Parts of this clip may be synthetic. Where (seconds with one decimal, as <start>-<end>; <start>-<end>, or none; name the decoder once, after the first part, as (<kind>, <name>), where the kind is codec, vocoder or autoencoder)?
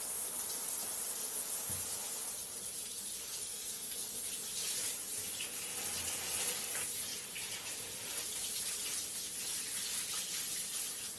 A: 3.2-4.2 (codec, SNAC)